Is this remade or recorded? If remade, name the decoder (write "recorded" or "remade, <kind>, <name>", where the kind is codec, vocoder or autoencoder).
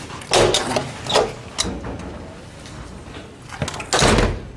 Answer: recorded